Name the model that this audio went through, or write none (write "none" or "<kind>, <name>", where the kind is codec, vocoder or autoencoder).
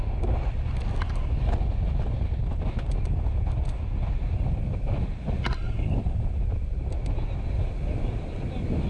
none